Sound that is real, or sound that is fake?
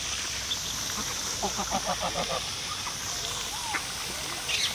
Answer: real